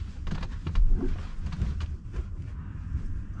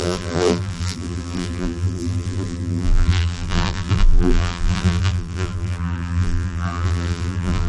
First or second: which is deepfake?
second